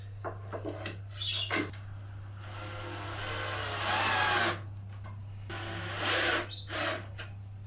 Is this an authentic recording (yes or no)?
yes